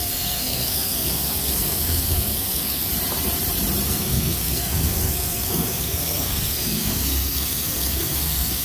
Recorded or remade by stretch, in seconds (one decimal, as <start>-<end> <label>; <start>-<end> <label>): 0.0-2.9 remade; 2.9-3.9 recorded; 3.9-8.6 remade